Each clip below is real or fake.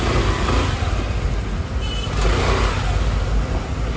real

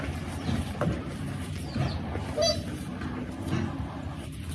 real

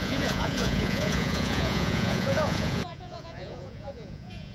fake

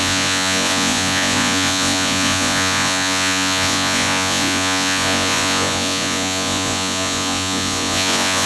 fake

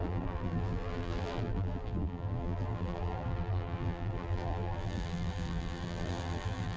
fake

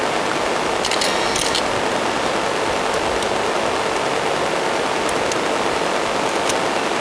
real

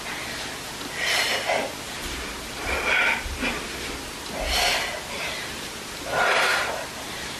real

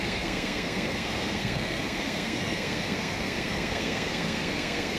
fake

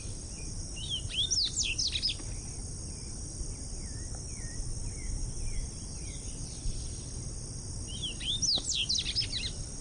real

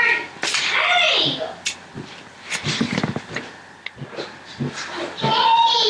real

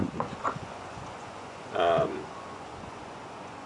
fake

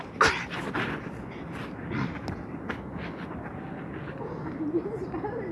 real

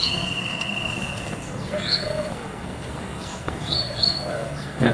fake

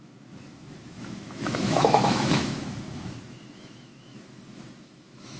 fake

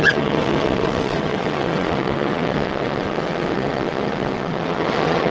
fake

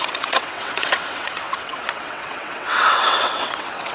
fake